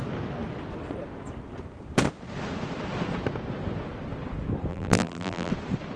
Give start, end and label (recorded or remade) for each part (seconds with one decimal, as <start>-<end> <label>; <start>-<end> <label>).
0.0-4.7 recorded; 4.7-5.5 remade; 5.5-6.0 recorded

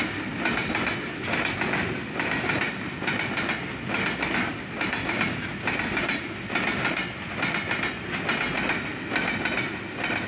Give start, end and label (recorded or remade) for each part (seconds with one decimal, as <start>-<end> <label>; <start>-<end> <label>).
0.0-10.3 recorded

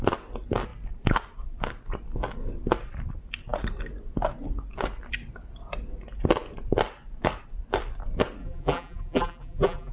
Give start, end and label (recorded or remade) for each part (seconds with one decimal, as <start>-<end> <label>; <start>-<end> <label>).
0.0-8.4 recorded; 8.4-9.9 remade

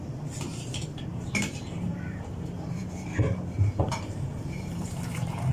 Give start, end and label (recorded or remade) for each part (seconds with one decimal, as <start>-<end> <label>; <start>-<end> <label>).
0.0-5.5 remade

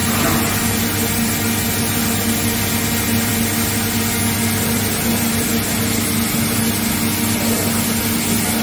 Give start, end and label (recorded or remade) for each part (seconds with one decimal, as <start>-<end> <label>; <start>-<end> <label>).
0.0-8.6 recorded

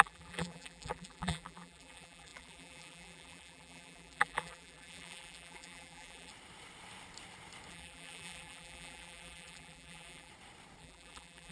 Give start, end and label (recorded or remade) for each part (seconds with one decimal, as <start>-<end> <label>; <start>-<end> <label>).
0.0-6.3 remade; 6.3-7.7 recorded; 7.7-10.3 remade; 10.3-10.8 recorded; 10.8-11.5 remade